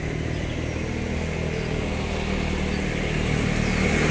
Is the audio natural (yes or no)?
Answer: yes